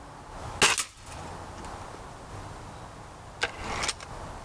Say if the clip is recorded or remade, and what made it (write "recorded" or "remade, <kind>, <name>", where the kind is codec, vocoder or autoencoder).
recorded